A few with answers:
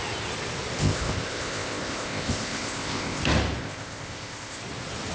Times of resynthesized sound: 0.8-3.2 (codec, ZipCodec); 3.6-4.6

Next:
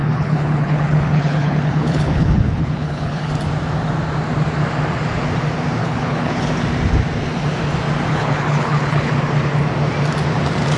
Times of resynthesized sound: 0.0-3.3 (codec, HILCodec); 5.8-6.5; 8.1-9.1

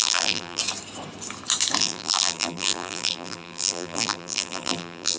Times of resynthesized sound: 0.0-0.6 (vocoder, BigVGAN v2); 1.8-5.2

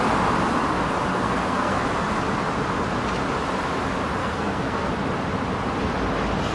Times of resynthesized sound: 1.1-1.8 (codec, SNAC); 4.2-4.9